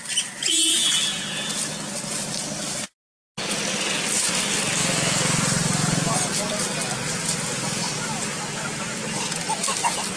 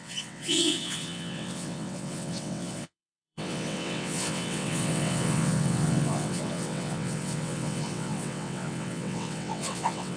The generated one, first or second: second